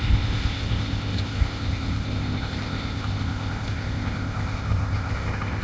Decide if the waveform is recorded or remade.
remade